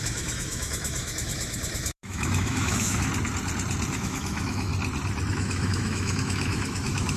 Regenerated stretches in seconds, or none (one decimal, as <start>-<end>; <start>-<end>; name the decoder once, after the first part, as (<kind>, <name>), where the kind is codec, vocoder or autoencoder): 0.0-3.1 (autoencoder, DAC-VAE); 3.9-4.7; 5.3-7.2